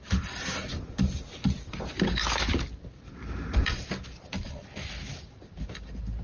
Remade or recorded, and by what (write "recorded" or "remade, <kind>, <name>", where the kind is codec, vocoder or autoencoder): recorded